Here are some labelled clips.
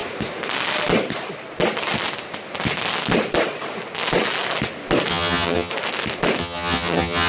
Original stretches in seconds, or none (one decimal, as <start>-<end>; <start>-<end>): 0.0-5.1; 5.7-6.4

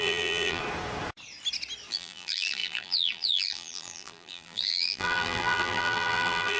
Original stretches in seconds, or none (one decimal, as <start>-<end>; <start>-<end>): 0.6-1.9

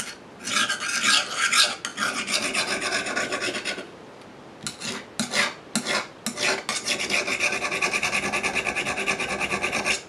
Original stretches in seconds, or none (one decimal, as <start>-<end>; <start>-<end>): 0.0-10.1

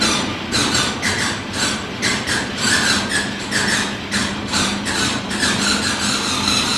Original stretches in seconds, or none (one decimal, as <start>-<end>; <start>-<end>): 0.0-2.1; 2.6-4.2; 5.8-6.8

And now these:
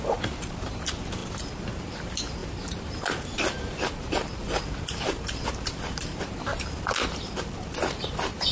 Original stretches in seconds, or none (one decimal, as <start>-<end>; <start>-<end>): 1.2-1.8; 6.5-7.0

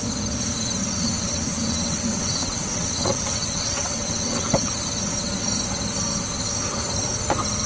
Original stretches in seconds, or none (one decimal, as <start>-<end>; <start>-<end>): 0.0-0.8; 4.7-7.7